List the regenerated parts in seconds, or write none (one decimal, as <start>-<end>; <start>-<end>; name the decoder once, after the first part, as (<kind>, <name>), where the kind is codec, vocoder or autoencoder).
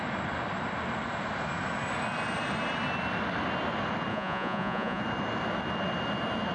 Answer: 4.1-5.0 (vocoder, Vocos)